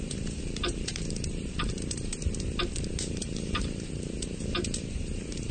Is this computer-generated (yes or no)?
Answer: yes